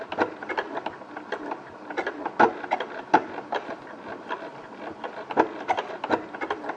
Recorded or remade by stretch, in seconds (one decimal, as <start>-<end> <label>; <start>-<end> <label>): 0.0-4.5 recorded; 4.5-5.9 remade; 5.9-6.8 recorded

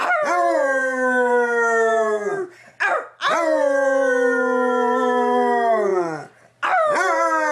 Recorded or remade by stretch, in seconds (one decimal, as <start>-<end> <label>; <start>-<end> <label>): 0.0-7.5 recorded

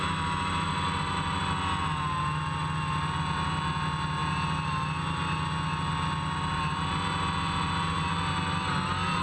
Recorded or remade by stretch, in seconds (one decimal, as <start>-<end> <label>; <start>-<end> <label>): 0.0-9.2 recorded

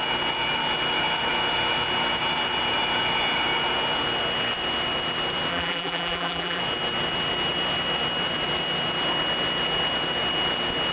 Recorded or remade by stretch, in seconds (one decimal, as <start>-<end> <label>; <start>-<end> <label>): 0.0-5.5 recorded; 5.5-6.6 remade; 6.6-10.9 recorded

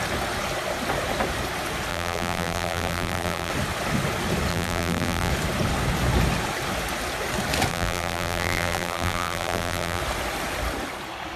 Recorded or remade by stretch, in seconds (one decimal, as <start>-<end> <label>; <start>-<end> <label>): 0.0-1.9 recorded; 1.9-3.5 remade; 3.5-4.5 recorded; 4.5-5.3 remade; 5.3-7.7 recorded; 7.7-10.0 remade; 10.0-11.4 recorded

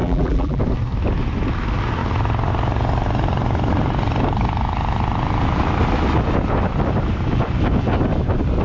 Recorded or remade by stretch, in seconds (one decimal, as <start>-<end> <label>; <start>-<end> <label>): 0.0-0.6 remade; 0.6-8.6 recorded

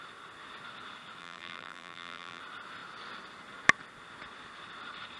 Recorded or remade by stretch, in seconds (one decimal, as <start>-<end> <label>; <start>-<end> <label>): 0.0-1.2 recorded; 1.2-2.4 remade; 2.4-5.2 recorded

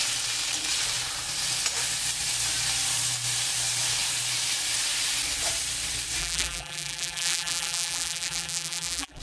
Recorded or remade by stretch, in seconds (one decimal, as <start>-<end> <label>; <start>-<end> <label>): 0.0-6.2 recorded; 6.2-9.2 remade